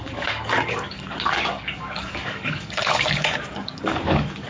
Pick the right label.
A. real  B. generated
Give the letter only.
B